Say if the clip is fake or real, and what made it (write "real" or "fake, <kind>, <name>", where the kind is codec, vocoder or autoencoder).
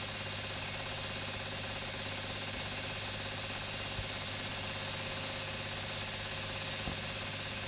real